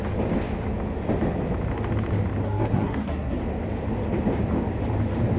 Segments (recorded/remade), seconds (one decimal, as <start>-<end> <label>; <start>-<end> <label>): 0.0-2.4 recorded; 2.4-3.4 remade; 3.4-5.4 recorded